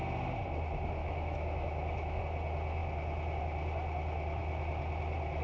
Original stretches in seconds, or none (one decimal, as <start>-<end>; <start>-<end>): 0.0-1.0; 2.2-5.4